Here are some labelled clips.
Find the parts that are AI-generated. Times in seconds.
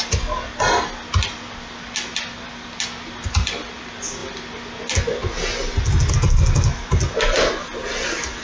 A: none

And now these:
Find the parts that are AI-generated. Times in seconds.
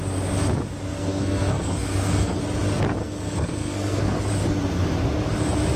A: 0.9-2.4 (codec, SNAC); 3.0-4.2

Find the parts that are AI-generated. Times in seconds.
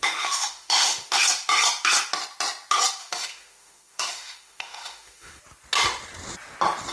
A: 0.0-1.2 (autoencoder, DAC-VAE); 3.0-5.4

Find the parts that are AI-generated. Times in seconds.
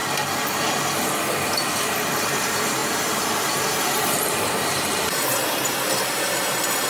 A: 2.2-6.9 (vocoder, BigVGAN v2)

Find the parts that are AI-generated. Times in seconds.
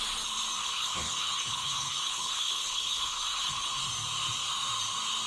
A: 0.6-3.8 (codec, HILCodec)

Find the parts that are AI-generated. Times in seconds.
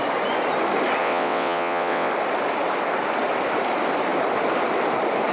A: 1.0-2.1 (vocoder, WaveNeXt)